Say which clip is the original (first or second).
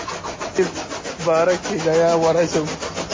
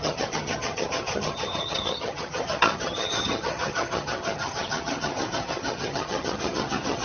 first